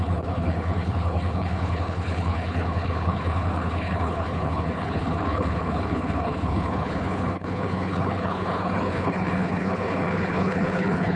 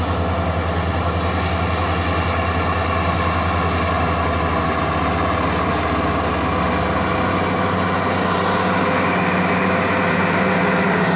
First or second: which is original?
second